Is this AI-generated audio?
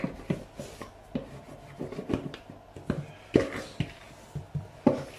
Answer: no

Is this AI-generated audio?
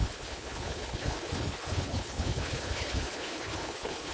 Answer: yes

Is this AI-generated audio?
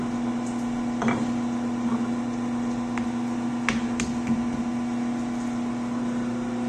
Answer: no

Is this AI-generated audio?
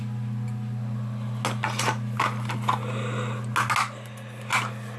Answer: no